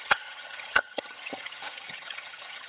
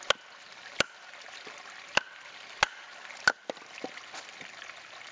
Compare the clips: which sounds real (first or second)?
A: second